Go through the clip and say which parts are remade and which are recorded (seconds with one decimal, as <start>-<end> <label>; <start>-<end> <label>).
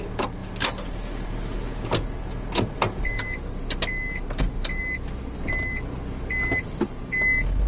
0.0-7.7 recorded